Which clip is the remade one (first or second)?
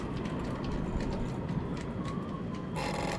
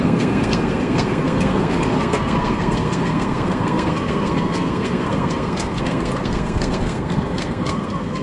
second